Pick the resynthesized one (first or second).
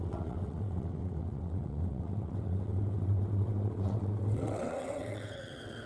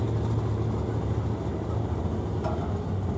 first